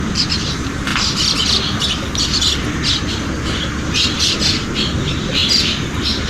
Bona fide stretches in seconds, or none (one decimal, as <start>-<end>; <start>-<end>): 0.0-6.3